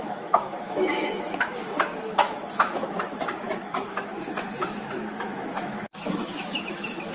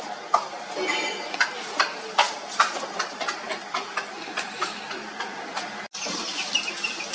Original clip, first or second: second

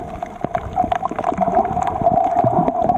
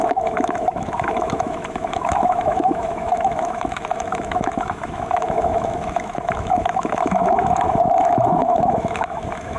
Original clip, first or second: first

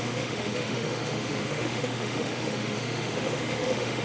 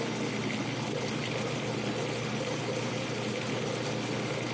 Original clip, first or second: second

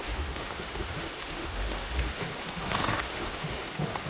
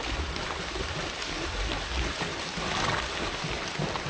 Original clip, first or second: second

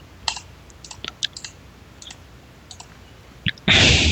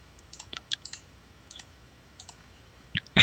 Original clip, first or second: first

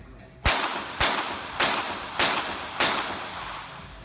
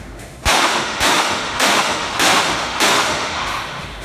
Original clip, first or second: first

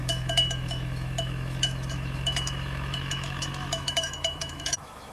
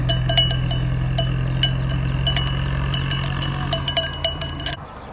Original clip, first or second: second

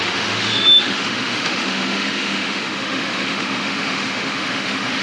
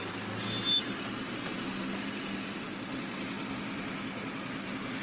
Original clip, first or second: second